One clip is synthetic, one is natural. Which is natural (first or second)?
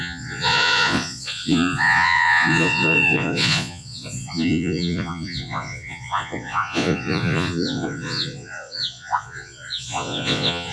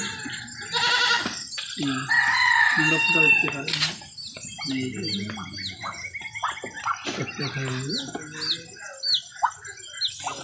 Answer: second